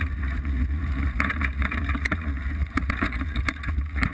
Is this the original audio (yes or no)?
no